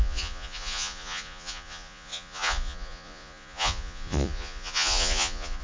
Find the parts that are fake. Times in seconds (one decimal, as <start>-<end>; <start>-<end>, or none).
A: 0.0-5.6